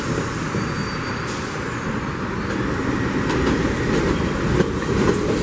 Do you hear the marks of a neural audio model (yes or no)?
no